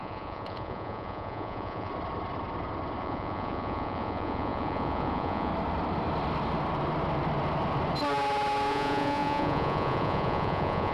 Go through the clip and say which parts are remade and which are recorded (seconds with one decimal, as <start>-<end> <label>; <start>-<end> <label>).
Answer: 0.0-1.9 remade; 1.9-3.0 recorded; 3.0-5.5 remade; 5.5-8.7 recorded; 8.7-10.9 remade